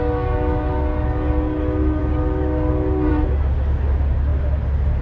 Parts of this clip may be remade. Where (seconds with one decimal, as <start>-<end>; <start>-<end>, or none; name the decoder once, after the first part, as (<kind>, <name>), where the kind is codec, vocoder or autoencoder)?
none